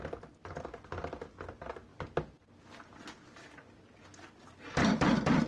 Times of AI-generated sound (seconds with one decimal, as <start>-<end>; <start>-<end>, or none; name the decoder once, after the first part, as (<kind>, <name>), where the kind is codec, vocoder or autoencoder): none